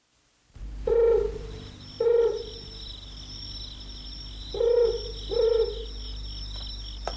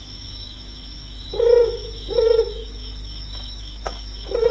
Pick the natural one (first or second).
first